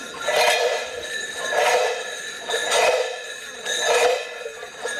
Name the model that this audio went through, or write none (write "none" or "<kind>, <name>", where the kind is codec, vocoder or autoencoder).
none